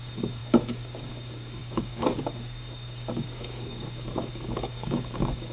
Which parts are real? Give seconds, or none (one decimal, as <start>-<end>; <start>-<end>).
none